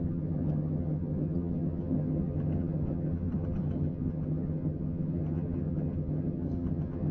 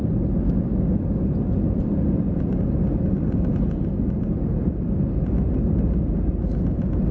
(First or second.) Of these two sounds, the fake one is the first